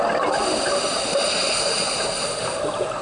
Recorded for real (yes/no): yes